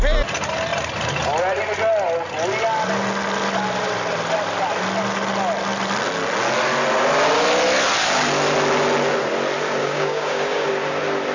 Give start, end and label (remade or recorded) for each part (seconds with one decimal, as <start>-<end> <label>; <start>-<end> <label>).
0.0-9.8 recorded; 9.8-10.7 remade; 10.7-11.3 recorded